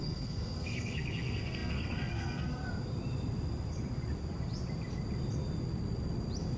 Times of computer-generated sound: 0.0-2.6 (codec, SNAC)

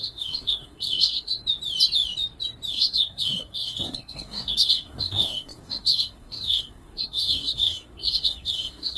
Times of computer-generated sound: 0.0-1.4 (codec, SNAC); 2.7-9.0

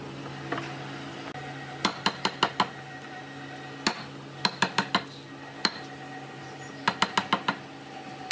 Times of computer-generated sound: none

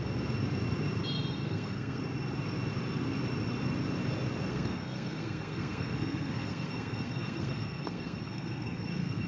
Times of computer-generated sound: 1.4-2.0 (codec, SNAC); 4.5-9.3

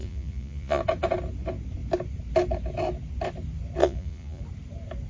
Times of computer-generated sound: 0.0-0.8 (vocoder, Vocos); 3.8-4.4

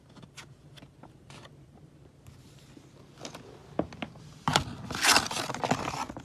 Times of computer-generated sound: none